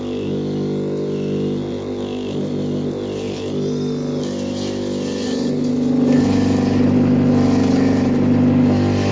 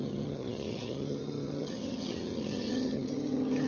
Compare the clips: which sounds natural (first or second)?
first